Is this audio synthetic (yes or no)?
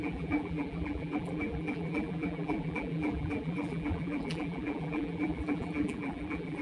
yes